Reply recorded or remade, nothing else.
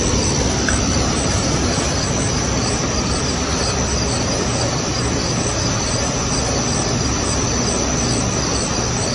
recorded